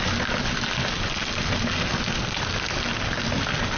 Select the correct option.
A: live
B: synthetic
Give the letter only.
A